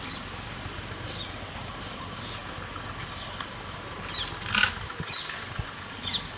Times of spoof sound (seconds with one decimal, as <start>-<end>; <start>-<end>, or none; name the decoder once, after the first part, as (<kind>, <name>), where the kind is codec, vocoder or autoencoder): none